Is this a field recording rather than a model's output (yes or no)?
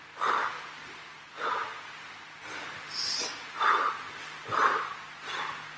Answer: yes